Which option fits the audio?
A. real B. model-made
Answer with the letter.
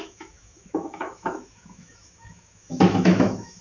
B